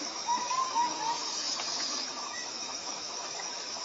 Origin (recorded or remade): remade